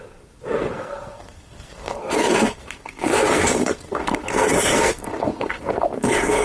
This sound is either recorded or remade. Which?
remade